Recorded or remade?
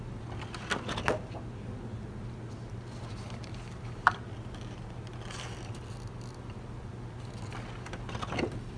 recorded